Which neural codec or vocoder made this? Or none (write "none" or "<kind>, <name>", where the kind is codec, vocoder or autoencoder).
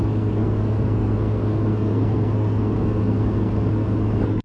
codec, SNAC